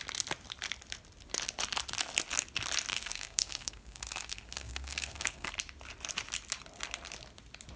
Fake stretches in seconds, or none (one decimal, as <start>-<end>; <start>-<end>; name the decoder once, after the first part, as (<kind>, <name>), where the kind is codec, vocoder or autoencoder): 2.9-5.5 (codec, SNAC)